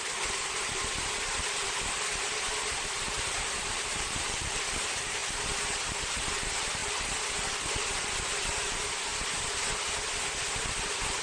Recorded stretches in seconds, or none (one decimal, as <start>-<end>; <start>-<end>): 9.1-11.2